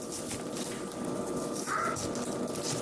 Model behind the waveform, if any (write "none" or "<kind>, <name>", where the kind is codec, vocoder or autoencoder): none